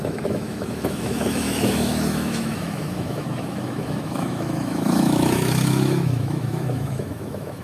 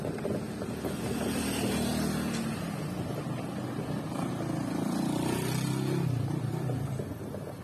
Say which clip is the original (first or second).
second